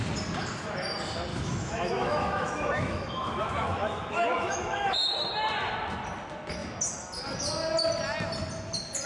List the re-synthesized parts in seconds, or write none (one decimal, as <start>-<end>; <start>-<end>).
1.3-5.3